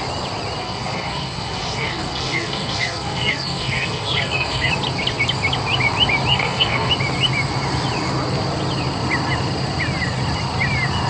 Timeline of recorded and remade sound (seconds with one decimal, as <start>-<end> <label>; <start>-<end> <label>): 0.0-0.6 recorded; 0.6-4.7 remade; 4.7-6.3 recorded; 6.3-6.9 remade; 6.9-11.1 recorded